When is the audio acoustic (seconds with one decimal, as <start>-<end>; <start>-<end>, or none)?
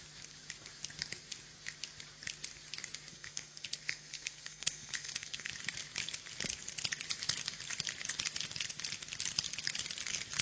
0.0-3.1; 5.5-10.4